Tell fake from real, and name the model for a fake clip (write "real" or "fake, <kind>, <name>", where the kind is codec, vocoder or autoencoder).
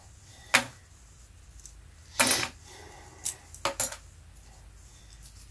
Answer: real